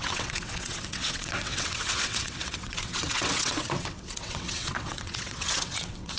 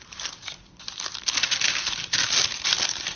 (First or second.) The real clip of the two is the second